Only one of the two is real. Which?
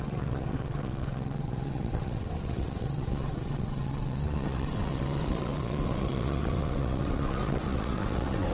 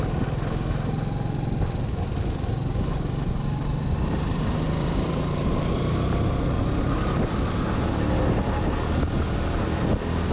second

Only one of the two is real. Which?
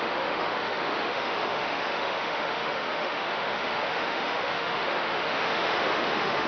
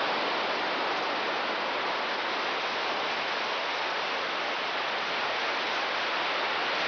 second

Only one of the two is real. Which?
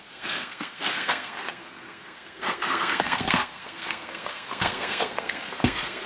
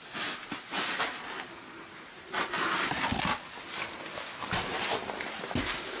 second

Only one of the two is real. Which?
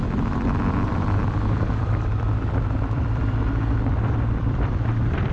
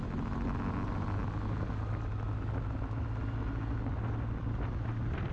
second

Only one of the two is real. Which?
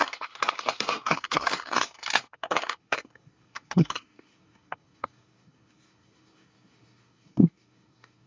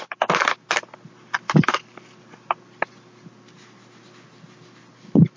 second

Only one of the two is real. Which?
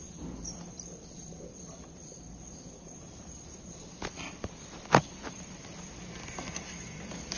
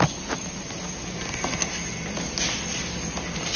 second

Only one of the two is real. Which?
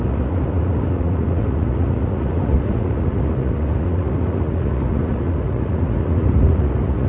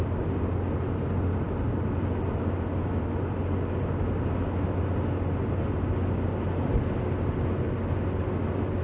second